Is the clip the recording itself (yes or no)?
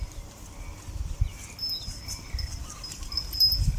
yes